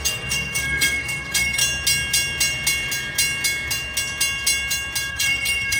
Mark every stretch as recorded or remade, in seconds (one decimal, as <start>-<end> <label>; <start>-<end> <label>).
0.0-1.6 remade; 1.6-5.1 recorded; 5.1-5.8 remade